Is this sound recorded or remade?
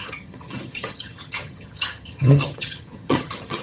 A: remade